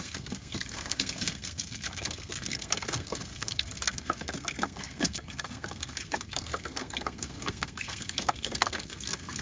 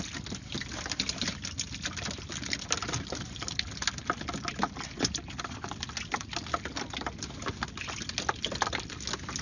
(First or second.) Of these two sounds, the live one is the second